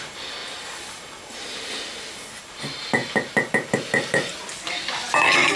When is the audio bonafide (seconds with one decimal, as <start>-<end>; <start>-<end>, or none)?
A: 0.0-5.6